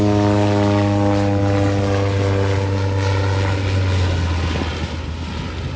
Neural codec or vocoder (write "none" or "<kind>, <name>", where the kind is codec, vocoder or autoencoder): none